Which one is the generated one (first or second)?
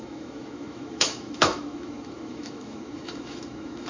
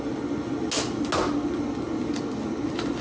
first